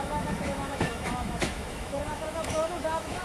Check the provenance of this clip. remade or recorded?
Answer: remade